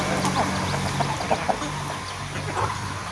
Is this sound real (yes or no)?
yes